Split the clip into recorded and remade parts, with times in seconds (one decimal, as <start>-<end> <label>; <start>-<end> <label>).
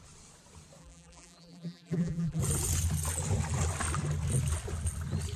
0.0-0.8 recorded; 0.8-2.4 remade; 2.4-5.4 recorded